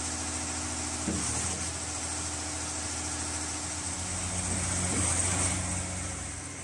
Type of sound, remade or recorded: recorded